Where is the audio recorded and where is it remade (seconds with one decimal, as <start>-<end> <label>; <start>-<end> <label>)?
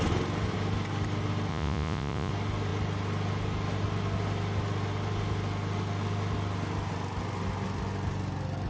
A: 0.0-1.5 recorded; 1.5-2.3 remade; 2.3-8.7 recorded